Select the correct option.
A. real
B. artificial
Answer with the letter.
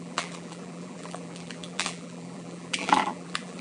B